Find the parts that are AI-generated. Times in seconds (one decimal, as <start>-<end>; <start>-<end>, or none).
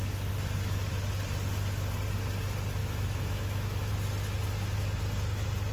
2.8-3.9